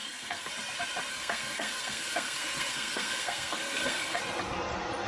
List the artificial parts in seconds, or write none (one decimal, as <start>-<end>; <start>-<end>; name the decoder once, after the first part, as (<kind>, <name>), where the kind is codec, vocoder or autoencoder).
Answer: 0.0-0.5 (codec, SNAC); 1.1-4.2